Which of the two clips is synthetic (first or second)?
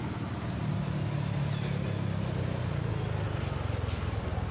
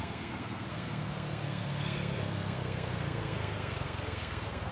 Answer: second